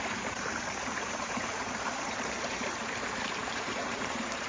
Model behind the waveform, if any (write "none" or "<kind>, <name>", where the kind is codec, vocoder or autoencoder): vocoder, BigVGAN v2